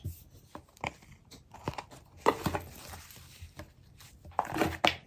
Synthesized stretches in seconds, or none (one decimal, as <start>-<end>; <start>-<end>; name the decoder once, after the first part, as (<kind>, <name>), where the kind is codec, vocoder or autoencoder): none